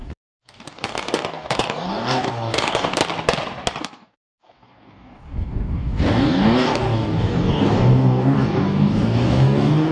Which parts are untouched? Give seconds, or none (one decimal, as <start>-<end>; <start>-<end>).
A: 3.0-3.8